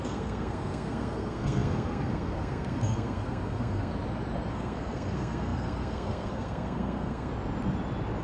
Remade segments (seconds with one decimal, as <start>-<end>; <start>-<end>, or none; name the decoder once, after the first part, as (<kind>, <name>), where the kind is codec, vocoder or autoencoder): 0.0-3.9 (codec, SNAC); 4.5-7.3